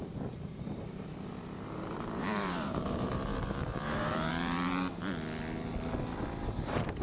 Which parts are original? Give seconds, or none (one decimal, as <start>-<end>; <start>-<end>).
5.0-6.4